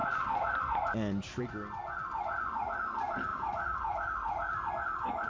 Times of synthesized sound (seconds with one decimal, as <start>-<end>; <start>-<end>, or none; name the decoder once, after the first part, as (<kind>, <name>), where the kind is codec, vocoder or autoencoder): 0.0-1.4 (vocoder, BigVGAN v2)